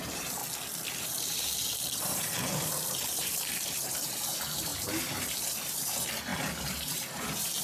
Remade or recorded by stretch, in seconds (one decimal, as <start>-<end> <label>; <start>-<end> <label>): 0.0-0.4 remade; 0.4-1.0 recorded; 1.0-7.6 remade